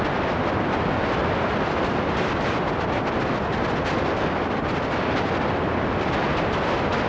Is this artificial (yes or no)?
no